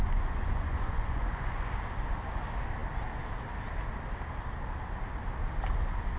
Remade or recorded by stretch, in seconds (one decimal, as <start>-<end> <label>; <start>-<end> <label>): 0.0-1.7 remade; 1.7-6.2 recorded